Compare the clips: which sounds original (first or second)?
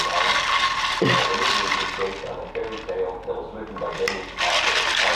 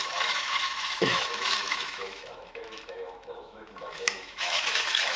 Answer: first